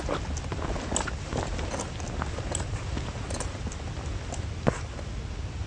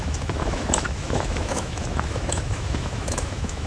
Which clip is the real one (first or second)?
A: first